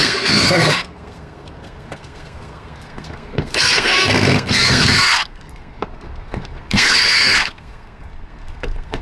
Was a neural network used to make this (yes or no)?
yes